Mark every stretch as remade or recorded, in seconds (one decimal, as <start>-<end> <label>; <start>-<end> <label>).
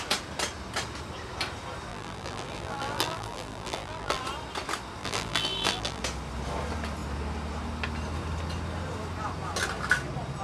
0.0-1.9 recorded; 1.9-4.2 remade; 4.2-5.0 recorded; 5.0-6.0 remade; 6.0-10.4 recorded